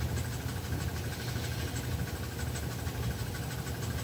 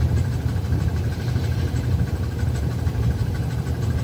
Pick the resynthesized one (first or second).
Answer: second